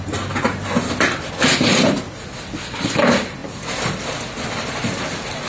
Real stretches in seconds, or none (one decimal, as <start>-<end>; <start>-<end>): 0.0-5.5